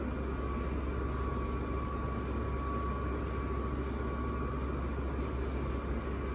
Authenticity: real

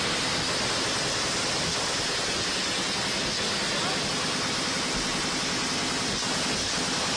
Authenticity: real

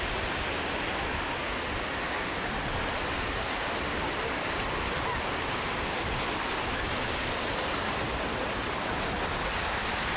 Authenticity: real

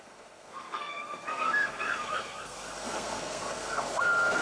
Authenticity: fake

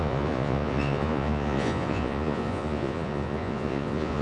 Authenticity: fake